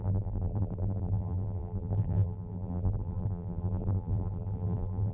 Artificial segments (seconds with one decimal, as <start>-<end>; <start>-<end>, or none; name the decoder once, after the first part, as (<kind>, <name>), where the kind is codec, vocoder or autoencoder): 0.0-5.1 (vocoder, BigVGAN v2)